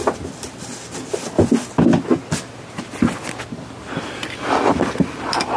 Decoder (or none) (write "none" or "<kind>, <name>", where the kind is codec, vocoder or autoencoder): none